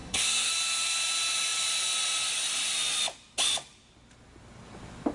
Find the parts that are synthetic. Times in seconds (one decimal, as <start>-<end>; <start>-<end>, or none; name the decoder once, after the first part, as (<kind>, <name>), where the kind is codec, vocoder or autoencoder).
0.0-0.5 (codec, SNAC)